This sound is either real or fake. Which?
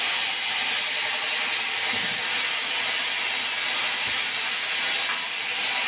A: real